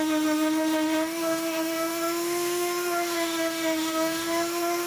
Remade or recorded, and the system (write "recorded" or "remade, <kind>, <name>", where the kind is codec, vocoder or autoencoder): remade, autoencoder, DAC-VAE